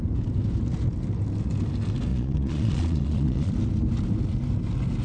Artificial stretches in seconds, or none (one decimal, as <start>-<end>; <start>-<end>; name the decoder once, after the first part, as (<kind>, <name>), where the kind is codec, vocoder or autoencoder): 2.1-3.5 (vocoder, Vocos)